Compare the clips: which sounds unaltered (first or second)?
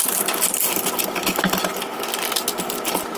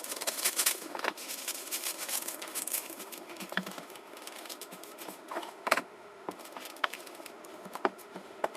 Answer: first